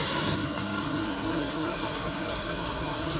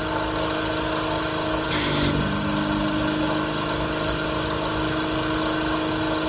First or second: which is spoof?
first